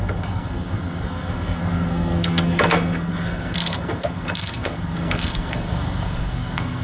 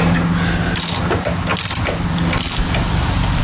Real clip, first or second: second